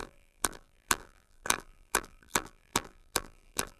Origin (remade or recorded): remade